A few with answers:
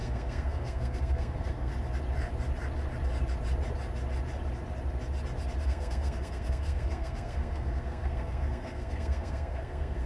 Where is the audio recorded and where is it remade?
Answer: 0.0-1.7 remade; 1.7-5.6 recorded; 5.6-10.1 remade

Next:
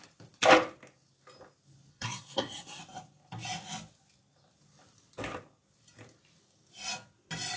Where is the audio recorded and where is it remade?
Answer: 0.0-1.9 recorded; 1.9-2.8 remade; 2.8-7.6 recorded

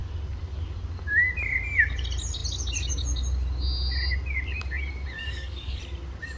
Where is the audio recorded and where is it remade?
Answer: 0.0-5.2 recorded; 5.2-5.8 remade; 5.8-6.4 recorded

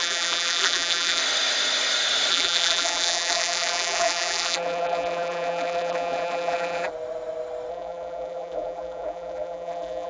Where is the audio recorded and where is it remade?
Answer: 0.0-1.2 remade; 1.2-2.3 recorded; 2.3-6.9 remade; 6.9-7.7 recorded; 7.7-10.1 remade

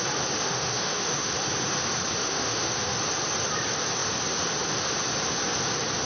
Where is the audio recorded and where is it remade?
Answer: 0.0-0.4 recorded; 0.4-1.3 remade; 1.3-2.2 recorded; 2.2-3.0 remade; 3.0-6.1 recorded

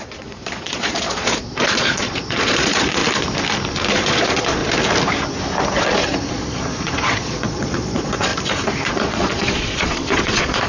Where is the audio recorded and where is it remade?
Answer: 0.0-3.0 remade; 3.0-3.9 recorded; 3.9-4.6 remade; 4.6-6.3 recorded; 6.3-8.3 remade; 8.3-8.9 recorded; 8.9-10.7 remade

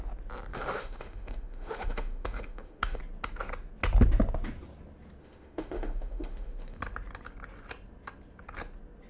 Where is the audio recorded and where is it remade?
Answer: 0.0-0.5 recorded; 0.5-3.0 remade; 3.0-5.2 recorded; 5.2-6.8 remade; 6.8-9.1 recorded

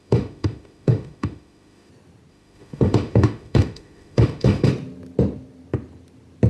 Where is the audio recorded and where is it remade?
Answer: 0.0-1.9 remade; 1.9-2.3 recorded; 2.3-4.7 remade; 4.7-6.5 recorded